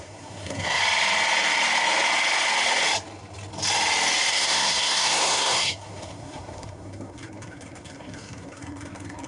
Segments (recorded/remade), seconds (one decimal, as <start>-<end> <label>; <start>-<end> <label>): 0.0-0.8 remade; 0.8-4.3 recorded; 4.3-9.3 remade